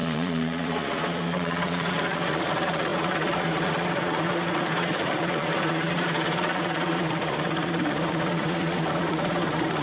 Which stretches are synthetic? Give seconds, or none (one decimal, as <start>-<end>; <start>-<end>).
0.0-9.8